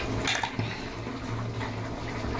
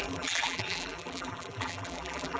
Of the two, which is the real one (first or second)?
first